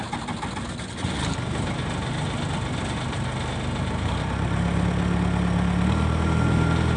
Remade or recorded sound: recorded